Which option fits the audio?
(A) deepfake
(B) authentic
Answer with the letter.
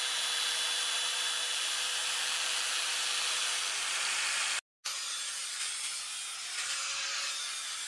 B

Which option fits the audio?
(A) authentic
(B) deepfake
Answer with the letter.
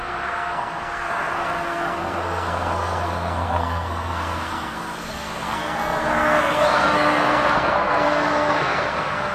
B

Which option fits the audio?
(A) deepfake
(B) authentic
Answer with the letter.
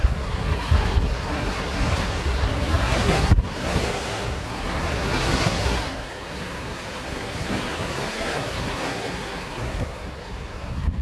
A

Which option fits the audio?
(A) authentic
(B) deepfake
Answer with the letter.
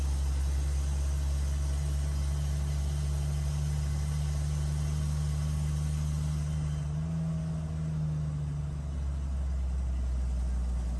A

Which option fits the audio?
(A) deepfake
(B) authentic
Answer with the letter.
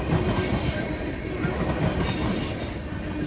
B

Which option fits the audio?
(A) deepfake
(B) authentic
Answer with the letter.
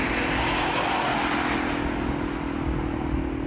B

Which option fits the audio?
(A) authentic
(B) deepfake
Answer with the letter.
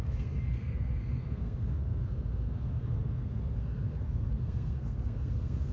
B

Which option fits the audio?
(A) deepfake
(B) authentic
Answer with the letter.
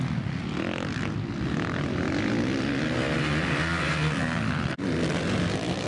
B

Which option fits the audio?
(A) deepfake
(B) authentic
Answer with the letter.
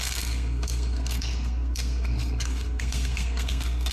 A